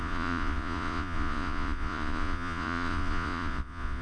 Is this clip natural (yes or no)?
no